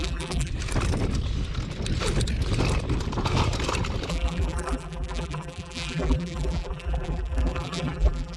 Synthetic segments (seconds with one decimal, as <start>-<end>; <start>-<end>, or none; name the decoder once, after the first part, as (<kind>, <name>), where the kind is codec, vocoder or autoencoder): 0.0-0.5 (vocoder, BigVGAN v2); 4.1-8.4